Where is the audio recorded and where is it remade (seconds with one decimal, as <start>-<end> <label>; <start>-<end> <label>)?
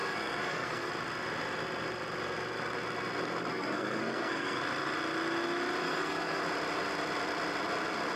0.0-0.9 remade; 0.9-3.5 recorded; 3.5-4.6 remade; 4.6-5.8 recorded; 5.8-6.4 remade; 6.4-8.2 recorded